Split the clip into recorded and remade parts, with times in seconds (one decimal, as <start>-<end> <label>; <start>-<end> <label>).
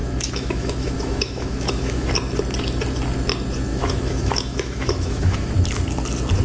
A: 0.0-2.1 remade; 2.1-3.7 recorded; 3.7-5.5 remade; 5.5-6.4 recorded